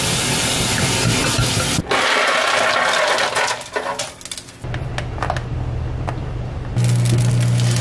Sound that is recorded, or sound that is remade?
recorded